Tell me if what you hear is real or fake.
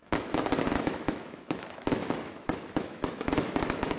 fake